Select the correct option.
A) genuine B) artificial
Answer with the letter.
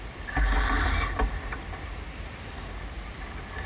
A